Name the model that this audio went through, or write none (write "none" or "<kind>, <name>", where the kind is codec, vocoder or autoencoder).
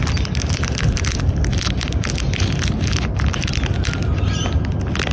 none